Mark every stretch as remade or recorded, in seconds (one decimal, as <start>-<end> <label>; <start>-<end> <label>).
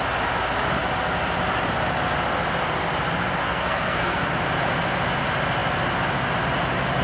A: 0.0-3.4 recorded; 3.4-4.3 remade; 4.3-7.0 recorded